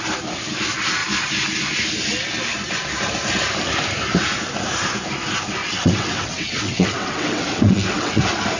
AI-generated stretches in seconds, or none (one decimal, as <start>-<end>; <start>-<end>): 5.6-8.2